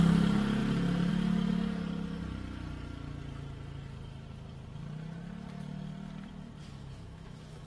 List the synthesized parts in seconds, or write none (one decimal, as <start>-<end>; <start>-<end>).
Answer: 6.7-7.7

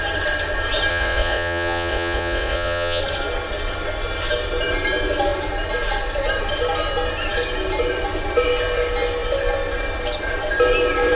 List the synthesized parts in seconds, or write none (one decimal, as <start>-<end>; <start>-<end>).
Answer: 0.9-3.0